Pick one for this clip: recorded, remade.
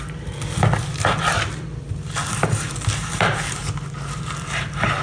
recorded